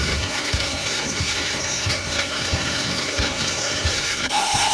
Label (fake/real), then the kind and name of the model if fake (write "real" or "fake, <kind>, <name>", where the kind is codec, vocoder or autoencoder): fake, codec, SNAC